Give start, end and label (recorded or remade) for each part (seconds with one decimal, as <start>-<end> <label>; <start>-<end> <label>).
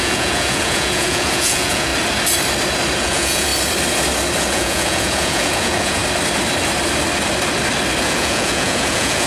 0.0-1.9 remade; 1.9-3.0 recorded; 3.0-3.5 remade; 3.5-4.4 recorded; 4.4-6.0 remade; 6.0-8.0 recorded; 8.0-9.3 remade